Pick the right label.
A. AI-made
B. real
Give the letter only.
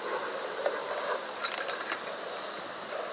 B